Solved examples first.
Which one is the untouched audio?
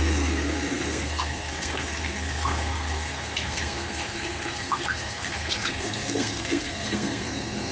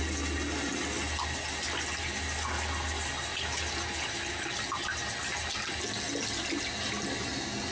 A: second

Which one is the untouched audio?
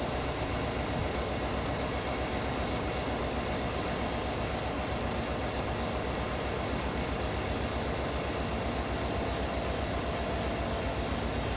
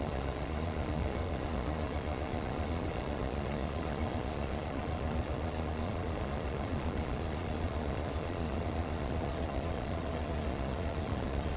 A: first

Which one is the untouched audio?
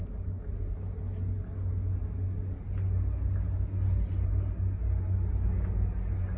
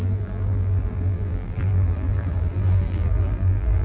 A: first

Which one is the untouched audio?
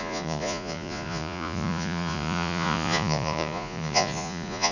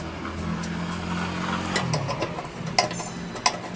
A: second